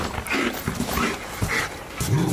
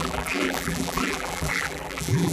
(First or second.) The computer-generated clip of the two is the second